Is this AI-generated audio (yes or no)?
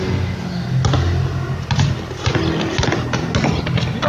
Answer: no